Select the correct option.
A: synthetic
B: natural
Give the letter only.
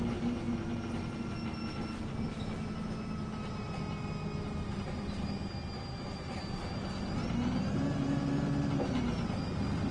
B